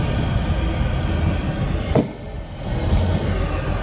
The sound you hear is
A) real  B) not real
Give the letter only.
A